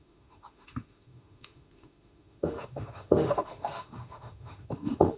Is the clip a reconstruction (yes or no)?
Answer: yes